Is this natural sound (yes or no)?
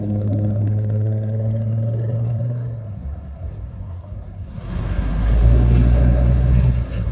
no